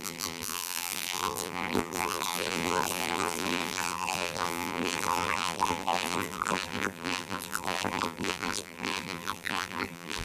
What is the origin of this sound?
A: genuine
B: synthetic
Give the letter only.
B